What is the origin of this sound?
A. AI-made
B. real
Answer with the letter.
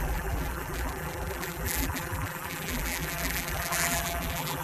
A